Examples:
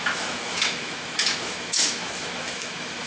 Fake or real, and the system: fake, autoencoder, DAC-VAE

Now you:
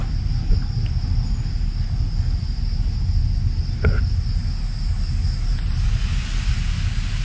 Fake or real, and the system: real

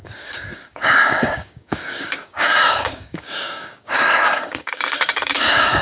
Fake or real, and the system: fake, codec, DAC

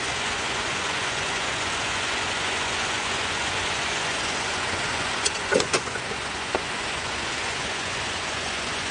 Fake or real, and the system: fake, vocoder, Vocos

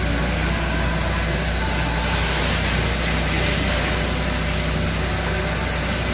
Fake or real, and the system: real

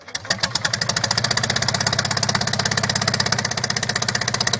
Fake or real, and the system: real